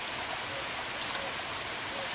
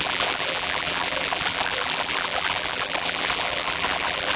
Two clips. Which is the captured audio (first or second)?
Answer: first